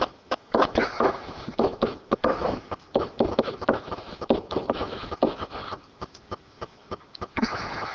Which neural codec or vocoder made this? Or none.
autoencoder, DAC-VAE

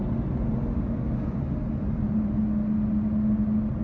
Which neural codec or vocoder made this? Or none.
none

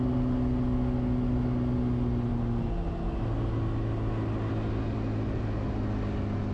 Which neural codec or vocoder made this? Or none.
none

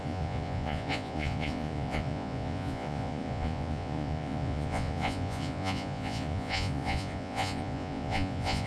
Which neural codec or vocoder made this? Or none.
vocoder, Vocos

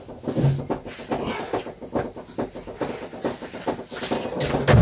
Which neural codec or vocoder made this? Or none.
none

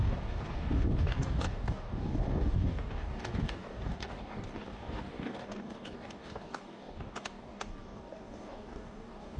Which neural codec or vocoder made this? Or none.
codec, DAC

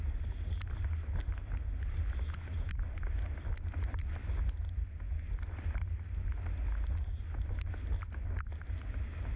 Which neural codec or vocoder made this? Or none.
none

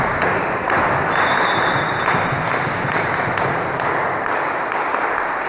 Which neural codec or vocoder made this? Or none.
none